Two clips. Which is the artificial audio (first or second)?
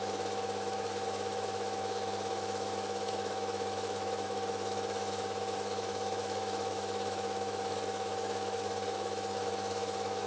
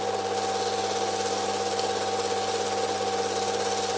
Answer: first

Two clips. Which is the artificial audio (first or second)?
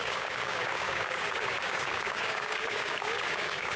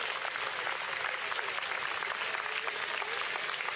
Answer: first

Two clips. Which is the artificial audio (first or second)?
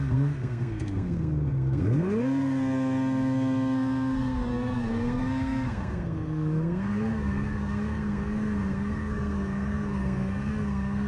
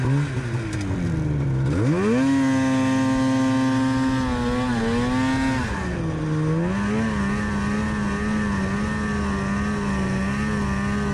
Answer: first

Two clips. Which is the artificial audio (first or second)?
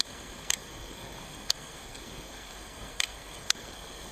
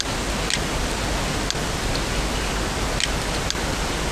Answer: first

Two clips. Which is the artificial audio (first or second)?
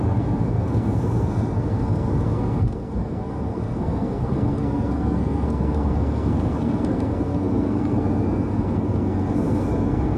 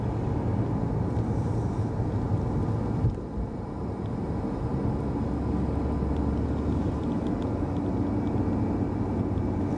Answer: first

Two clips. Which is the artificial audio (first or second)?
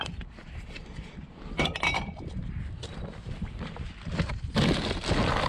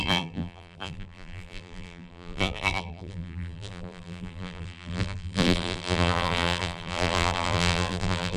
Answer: second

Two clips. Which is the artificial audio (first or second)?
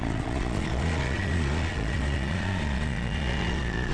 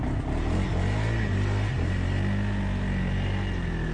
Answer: first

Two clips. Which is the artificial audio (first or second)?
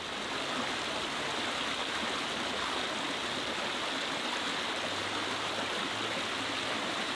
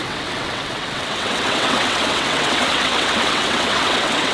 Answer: second